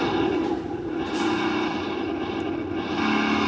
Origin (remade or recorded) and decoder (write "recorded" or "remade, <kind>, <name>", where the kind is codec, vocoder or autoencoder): recorded